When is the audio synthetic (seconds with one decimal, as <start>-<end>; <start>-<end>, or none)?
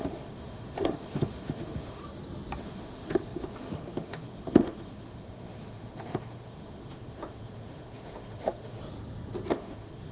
0.0-2.0; 2.6-8.8; 9.5-10.1